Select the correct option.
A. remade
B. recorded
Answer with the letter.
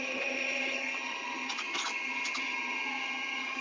A